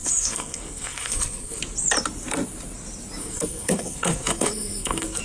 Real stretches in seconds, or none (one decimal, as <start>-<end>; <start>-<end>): 1.6-3.2